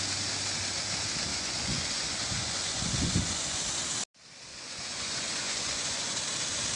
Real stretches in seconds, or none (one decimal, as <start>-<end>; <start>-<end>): 0.0-1.3; 3.6-4.5; 6.2-6.8